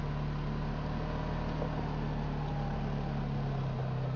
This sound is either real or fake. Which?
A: real